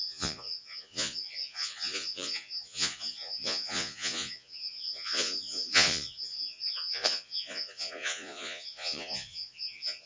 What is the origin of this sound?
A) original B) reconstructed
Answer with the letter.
B